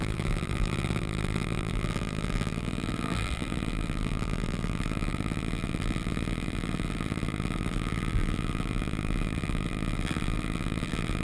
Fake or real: fake